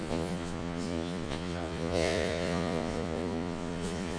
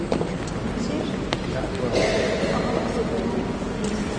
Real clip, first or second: second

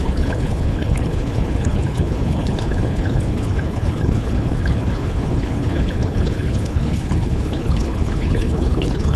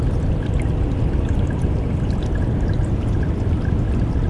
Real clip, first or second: second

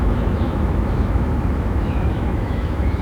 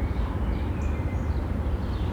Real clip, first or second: second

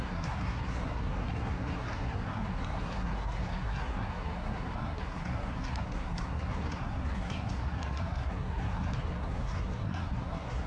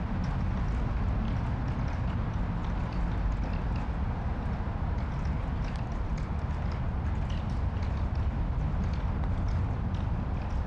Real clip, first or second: second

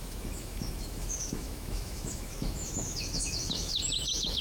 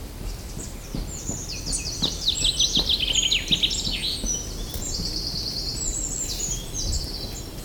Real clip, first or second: second